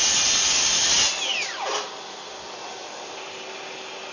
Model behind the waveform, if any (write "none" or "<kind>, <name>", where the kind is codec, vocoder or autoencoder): none